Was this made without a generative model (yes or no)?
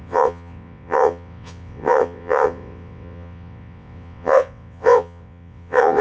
no